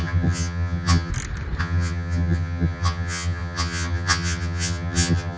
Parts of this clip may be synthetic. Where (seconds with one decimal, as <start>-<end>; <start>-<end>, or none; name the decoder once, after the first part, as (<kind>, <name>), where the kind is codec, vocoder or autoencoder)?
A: 0.0-1.1 (vocoder, HiFi-GAN); 1.6-5.4